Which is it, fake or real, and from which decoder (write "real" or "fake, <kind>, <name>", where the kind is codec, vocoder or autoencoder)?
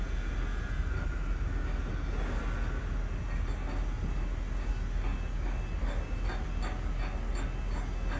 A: real